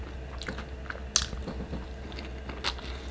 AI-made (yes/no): no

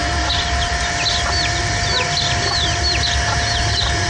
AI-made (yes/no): no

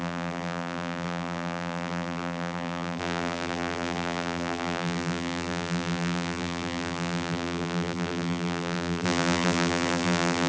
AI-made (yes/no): yes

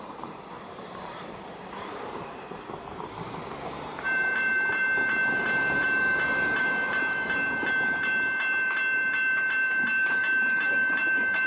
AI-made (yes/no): yes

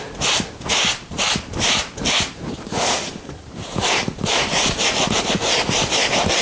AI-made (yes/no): yes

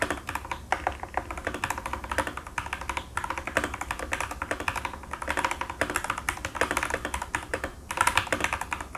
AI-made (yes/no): no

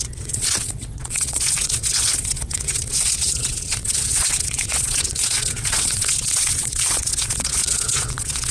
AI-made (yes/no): yes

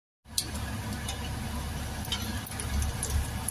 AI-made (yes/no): no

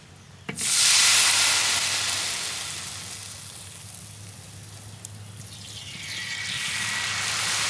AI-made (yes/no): no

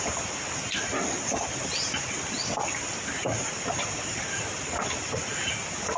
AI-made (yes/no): no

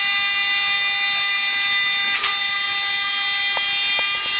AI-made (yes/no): no